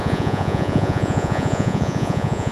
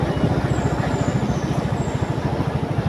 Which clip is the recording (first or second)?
second